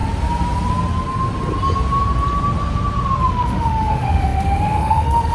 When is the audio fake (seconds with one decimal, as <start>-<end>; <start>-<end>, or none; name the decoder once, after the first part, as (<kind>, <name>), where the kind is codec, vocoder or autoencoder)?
3.2-5.3 (autoencoder, DAC-VAE)